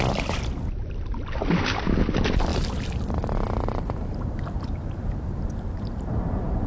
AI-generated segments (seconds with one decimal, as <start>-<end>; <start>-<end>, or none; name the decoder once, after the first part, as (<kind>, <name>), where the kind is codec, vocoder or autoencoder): 2.5-6.7 (vocoder, BigVGAN v2)